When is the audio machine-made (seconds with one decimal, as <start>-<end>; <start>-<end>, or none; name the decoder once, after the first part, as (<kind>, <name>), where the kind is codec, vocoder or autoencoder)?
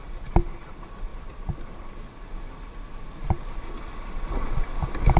none